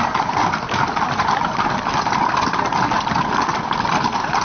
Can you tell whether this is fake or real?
real